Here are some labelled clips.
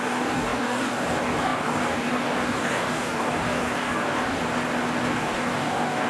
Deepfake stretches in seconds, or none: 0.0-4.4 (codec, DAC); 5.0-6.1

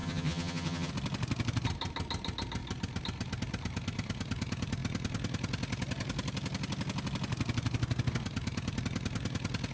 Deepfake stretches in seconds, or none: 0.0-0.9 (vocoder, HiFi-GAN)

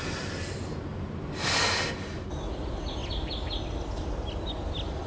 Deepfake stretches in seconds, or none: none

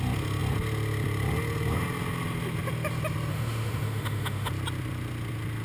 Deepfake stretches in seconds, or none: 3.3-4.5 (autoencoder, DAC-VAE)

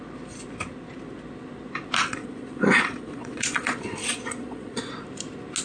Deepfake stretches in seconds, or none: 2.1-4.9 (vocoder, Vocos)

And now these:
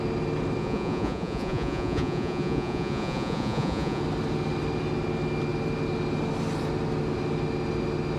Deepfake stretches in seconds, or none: 0.6-4.0 (vocoder, Vocos)

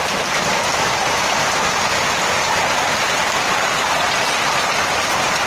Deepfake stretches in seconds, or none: 0.0-1.8 (vocoder, BigVGAN v2)